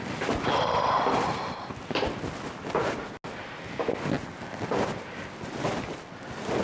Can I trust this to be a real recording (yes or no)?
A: yes